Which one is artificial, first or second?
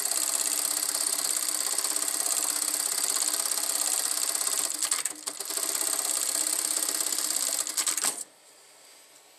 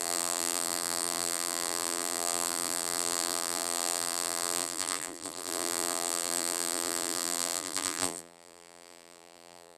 second